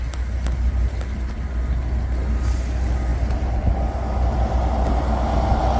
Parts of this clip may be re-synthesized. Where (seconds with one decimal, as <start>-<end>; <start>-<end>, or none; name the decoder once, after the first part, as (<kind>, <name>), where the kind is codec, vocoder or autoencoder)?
none